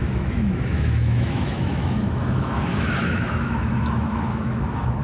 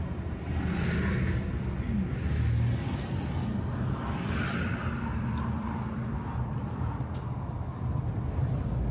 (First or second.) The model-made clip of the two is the first